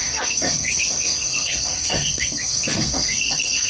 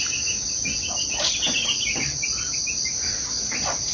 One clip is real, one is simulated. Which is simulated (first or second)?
first